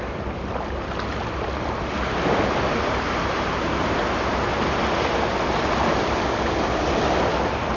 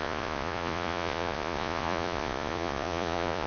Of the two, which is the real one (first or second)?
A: first